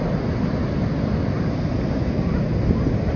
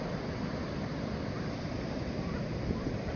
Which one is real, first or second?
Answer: first